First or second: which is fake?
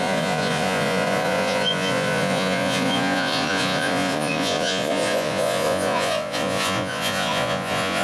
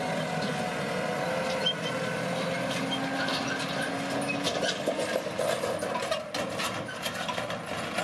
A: first